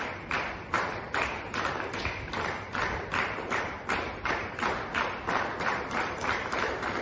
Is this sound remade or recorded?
remade